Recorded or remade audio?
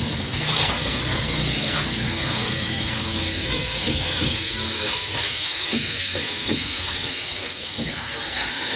remade